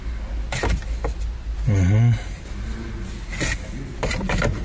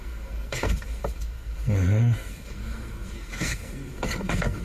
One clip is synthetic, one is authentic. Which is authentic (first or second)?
first